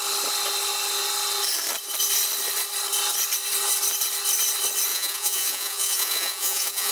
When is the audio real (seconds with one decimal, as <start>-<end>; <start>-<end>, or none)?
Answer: 0.0-4.9